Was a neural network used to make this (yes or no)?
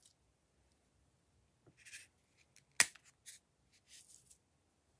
no